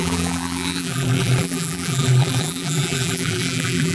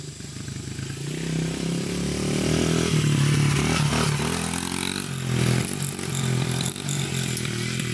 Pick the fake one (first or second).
first